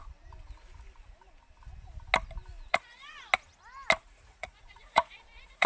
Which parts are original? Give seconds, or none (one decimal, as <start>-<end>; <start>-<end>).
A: 0.0-2.7; 3.3-4.0